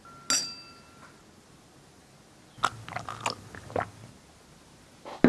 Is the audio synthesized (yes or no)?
no